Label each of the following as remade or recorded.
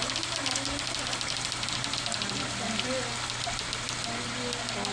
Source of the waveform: recorded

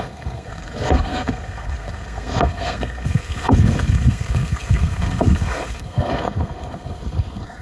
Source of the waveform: remade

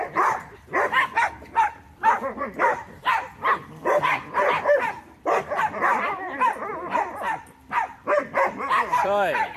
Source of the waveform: remade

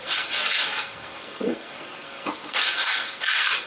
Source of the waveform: remade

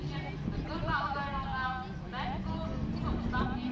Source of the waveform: recorded